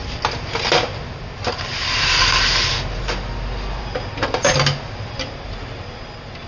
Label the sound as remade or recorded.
recorded